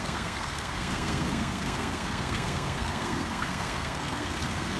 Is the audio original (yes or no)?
no